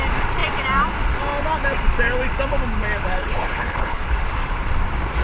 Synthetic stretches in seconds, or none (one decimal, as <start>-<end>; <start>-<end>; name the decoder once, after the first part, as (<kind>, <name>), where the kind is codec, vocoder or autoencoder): 3.2-4.0 (codec, HILCodec)